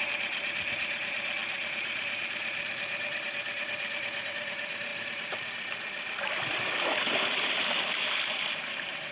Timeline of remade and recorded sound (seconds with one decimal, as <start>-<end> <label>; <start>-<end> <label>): 0.0-9.1 recorded